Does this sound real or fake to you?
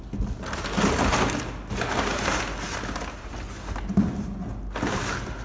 real